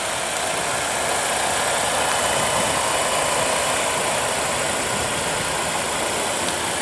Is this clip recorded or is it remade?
recorded